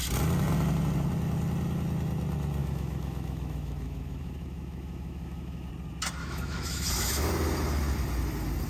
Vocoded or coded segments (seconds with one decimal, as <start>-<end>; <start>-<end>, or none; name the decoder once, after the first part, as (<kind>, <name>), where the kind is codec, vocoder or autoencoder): 2.6-5.7 (autoencoder, DAC-VAE); 6.2-7.3